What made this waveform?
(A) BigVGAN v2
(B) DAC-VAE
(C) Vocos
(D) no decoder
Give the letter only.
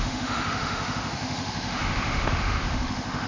B